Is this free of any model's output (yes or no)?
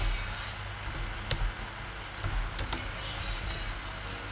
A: yes